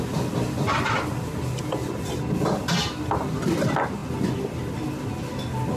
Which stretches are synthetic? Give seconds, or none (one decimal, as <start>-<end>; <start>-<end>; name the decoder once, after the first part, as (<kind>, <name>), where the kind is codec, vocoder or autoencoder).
none